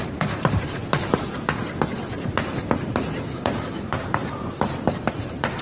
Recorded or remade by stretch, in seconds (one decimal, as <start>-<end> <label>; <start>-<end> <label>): 0.0-0.8 remade; 0.8-3.3 recorded; 3.3-5.6 remade